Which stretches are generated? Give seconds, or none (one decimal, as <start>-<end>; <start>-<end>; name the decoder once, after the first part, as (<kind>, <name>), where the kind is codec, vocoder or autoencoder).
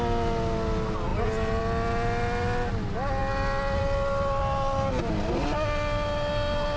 none